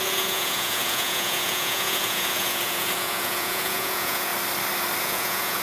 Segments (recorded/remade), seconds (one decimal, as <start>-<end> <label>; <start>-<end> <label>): 0.0-4.3 remade; 4.3-5.0 recorded; 5.0-5.6 remade